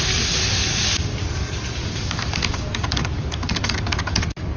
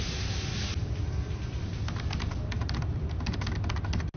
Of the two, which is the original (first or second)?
second